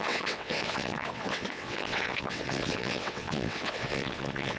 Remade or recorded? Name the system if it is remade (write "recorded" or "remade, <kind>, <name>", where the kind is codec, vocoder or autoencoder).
remade, vocoder, WaveNeXt